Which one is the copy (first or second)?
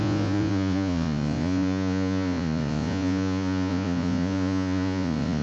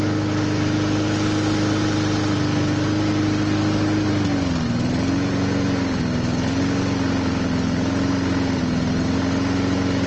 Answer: first